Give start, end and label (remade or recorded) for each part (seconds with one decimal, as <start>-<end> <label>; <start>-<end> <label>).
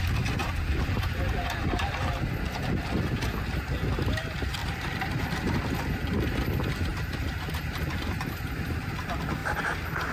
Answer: 0.0-0.4 recorded; 0.4-2.2 remade; 2.2-4.6 recorded; 4.6-5.2 remade; 5.2-6.9 recorded; 6.9-9.0 remade; 9.0-10.1 recorded